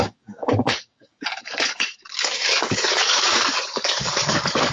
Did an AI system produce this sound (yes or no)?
yes